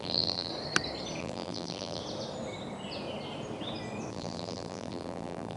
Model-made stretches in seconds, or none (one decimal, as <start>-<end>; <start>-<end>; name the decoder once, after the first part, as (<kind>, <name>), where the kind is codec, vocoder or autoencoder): 0.0-0.5 (vocoder, BigVGAN v2); 1.2-2.0; 4.1-5.6